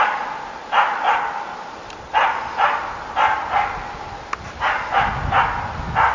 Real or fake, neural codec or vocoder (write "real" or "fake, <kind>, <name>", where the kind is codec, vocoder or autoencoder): real